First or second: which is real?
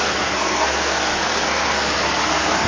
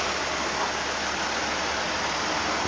second